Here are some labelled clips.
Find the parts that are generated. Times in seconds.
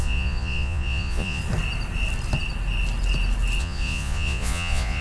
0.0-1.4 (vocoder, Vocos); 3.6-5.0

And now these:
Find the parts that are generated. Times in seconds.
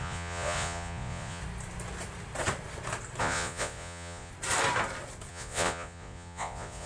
0.0-1.4 (vocoder, Vocos); 3.2-4.3; 5.3-6.9